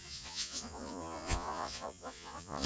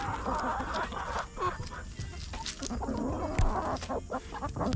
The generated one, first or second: first